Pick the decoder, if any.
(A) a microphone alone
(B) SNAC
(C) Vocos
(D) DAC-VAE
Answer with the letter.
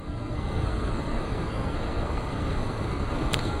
B